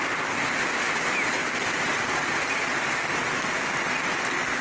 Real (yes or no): yes